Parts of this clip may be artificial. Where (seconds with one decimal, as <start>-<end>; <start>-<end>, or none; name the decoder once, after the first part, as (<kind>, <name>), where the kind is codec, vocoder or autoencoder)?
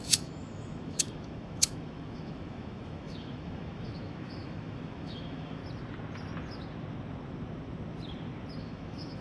0.0-5.6 (autoencoder, DAC-VAE); 8.6-9.2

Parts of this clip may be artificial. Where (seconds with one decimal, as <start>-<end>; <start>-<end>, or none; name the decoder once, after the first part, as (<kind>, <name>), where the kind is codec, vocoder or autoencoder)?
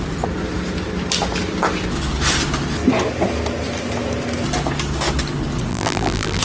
5.7-6.4 (vocoder, BigVGAN v2)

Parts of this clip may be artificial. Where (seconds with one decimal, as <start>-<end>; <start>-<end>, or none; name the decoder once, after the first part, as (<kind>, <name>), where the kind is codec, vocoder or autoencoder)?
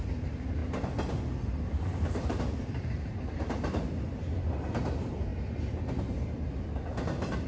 0.0-0.6 (vocoder, BigVGAN v2); 1.6-5.3; 6.0-7.5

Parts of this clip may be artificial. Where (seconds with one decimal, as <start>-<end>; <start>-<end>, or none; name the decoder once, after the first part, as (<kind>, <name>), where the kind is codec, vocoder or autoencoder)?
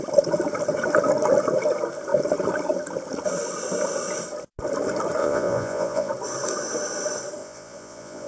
5.2-6.1 (vocoder, Vocos); 7.4-8.3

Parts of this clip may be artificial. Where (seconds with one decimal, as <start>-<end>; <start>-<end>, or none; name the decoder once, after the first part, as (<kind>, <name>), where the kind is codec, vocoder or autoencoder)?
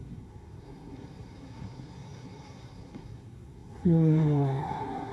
0.0-5.1 (codec, SNAC)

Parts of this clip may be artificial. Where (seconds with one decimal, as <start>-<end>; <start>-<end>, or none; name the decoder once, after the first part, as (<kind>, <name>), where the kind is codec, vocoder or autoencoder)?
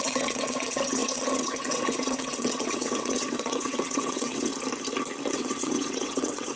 0.0-4.5 (vocoder, WaveNeXt); 5.3-6.6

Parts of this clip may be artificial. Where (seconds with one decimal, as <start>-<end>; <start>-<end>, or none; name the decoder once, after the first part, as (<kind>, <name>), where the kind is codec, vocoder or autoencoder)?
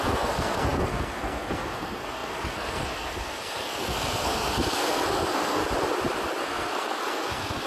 0.0-5.6 (codec, SNAC); 6.4-7.7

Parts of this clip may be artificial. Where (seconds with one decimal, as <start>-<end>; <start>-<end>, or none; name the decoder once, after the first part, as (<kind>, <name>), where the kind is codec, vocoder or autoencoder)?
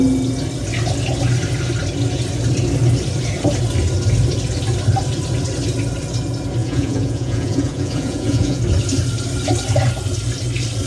6.6-8.6 (vocoder, Vocos)